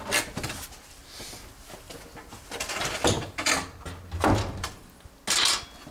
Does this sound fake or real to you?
real